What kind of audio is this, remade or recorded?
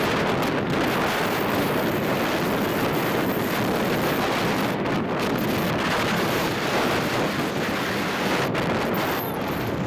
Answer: recorded